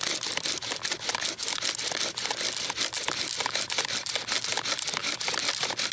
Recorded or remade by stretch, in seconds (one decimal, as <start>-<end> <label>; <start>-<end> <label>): 0.0-5.9 recorded